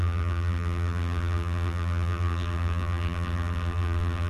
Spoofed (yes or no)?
yes